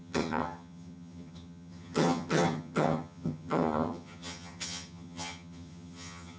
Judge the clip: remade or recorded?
remade